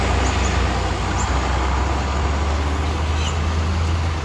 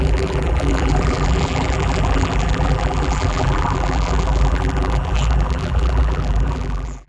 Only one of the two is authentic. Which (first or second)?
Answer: first